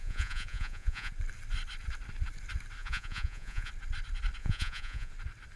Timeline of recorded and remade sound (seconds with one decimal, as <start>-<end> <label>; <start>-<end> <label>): 0.0-1.1 remade; 1.1-2.8 recorded; 2.8-3.7 remade; 3.7-4.4 recorded; 4.4-5.1 remade; 5.1-5.6 recorded